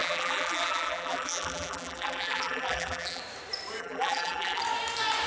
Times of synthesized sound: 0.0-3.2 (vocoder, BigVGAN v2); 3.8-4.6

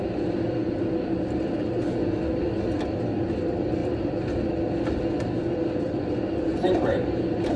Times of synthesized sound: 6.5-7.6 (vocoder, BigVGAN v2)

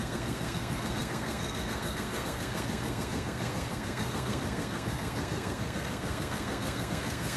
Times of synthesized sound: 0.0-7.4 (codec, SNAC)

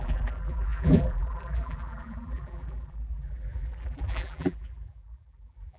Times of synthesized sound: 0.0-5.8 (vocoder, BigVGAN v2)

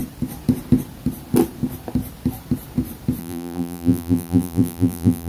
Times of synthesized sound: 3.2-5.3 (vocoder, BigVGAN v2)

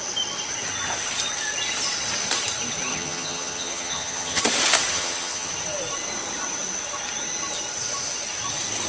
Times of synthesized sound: 2.9-4.4 (vocoder, HiFi-GAN); 4.9-5.5

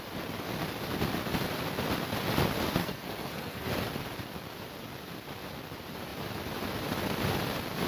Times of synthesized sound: 2.8-3.7 (codec, SNAC)